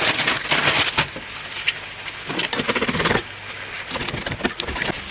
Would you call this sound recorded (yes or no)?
yes